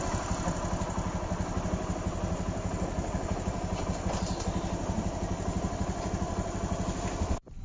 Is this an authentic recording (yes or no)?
yes